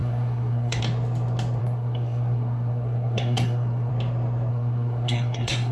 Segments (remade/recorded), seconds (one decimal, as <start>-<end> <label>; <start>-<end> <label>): 0.0-0.8 remade; 0.8-1.6 recorded; 1.6-3.9 remade; 3.9-4.5 recorded; 4.5-5.7 remade